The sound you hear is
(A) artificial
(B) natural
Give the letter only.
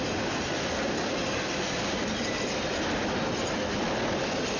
B